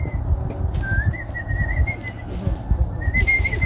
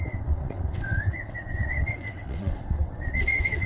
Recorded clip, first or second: first